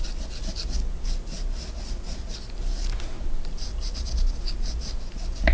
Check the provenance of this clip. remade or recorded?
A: recorded